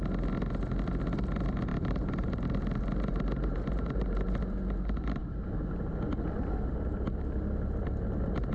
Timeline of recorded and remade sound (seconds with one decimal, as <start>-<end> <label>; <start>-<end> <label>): 0.0-1.7 recorded; 1.7-6.0 remade; 6.0-8.5 recorded